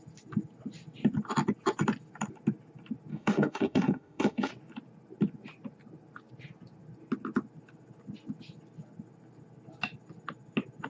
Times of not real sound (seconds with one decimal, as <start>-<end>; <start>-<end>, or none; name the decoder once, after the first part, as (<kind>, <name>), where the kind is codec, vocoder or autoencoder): 3.1-4.5 (autoencoder, DAC-VAE)